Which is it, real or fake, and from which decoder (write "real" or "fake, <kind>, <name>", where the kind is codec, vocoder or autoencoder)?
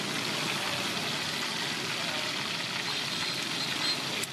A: real